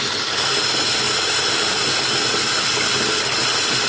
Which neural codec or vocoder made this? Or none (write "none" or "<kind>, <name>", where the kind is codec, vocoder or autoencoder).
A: none